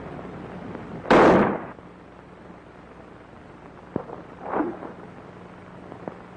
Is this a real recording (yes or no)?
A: yes